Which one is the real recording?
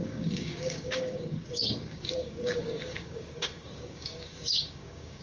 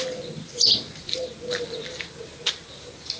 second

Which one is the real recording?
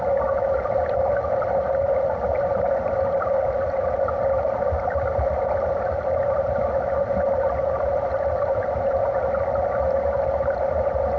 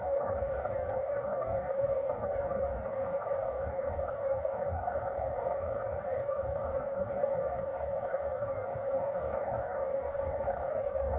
first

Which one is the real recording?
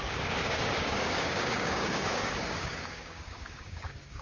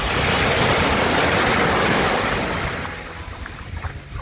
second